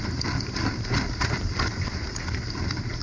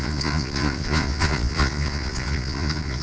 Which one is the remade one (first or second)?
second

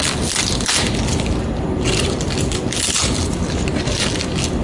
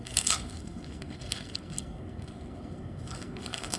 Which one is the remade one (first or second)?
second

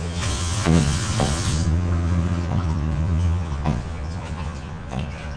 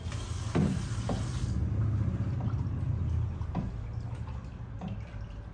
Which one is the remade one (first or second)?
first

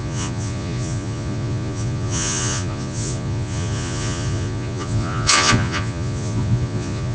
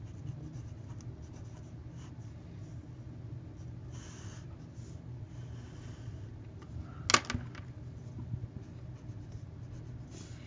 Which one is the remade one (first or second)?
first